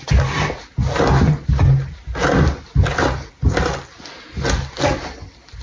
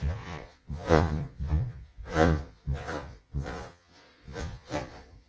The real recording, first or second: first